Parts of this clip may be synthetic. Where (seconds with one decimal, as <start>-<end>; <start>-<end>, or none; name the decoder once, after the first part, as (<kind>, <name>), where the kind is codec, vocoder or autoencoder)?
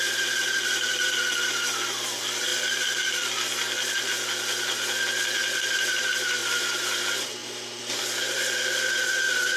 5.4-6.0 (vocoder, BigVGAN v2); 6.4-7.0